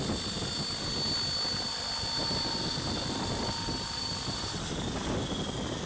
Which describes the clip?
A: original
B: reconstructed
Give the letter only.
A